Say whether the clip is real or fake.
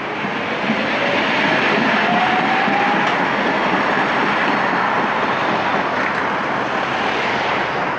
real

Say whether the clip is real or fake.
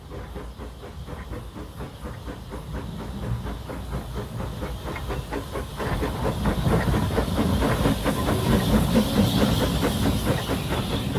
real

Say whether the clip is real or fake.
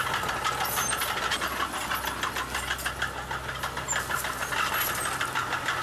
real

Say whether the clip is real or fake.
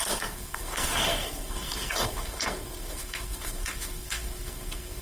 fake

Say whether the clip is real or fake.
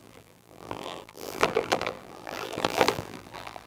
fake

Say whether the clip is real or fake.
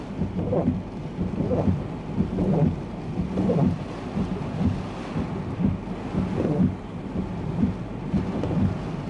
real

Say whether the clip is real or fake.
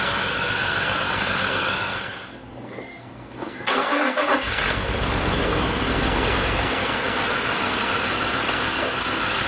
fake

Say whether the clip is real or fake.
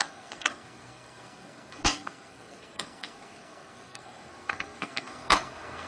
fake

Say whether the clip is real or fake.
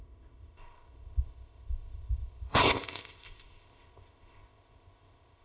fake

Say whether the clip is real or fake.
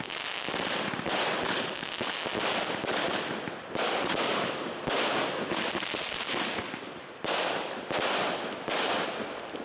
real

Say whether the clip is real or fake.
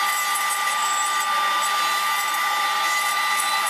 real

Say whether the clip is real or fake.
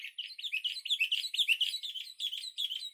real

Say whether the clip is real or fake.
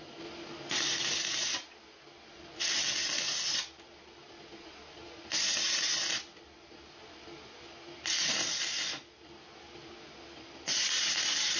real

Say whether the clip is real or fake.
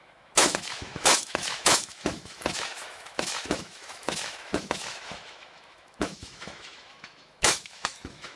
fake